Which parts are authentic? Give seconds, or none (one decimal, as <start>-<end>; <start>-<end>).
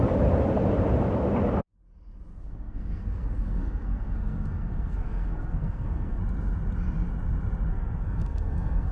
0.0-2.3; 6.2-7.7